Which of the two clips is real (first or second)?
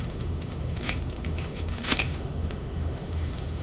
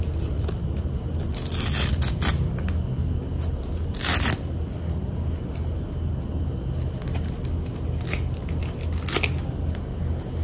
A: second